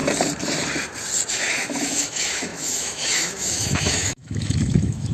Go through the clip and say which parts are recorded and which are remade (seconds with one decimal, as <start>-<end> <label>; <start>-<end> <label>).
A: 0.0-1.3 recorded; 1.3-5.1 remade